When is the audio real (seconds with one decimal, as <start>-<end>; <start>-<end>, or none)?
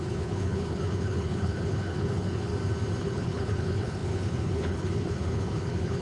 2.5-3.0